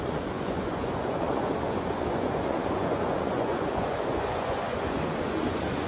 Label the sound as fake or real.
fake